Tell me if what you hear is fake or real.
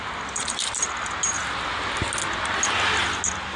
real